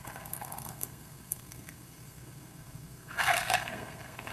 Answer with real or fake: fake